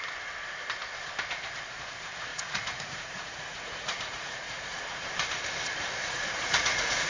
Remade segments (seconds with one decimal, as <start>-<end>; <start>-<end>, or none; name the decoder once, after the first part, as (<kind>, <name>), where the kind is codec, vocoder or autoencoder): 2.3-5.0 (vocoder, Vocos); 6.0-7.1